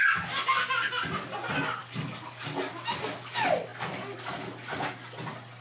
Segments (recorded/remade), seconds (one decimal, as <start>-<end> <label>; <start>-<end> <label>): 0.0-1.8 recorded; 1.8-2.7 remade; 2.7-5.6 recorded